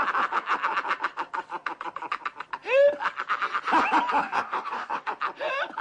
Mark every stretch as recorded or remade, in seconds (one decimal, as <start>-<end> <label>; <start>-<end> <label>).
0.0-4.2 recorded; 4.2-5.1 remade; 5.1-5.8 recorded